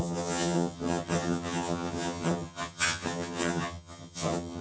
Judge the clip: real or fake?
fake